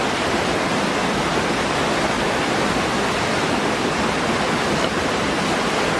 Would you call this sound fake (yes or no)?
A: no